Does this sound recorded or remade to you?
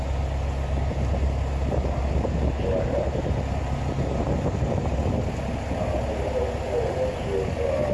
recorded